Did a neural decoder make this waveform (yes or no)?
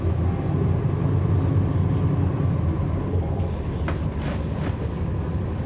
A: no